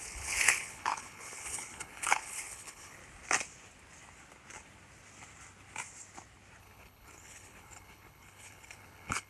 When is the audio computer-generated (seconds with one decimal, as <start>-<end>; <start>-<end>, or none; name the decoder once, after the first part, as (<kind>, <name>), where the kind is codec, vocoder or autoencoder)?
0.0-3.0 (codec, HILCodec); 6.6-9.3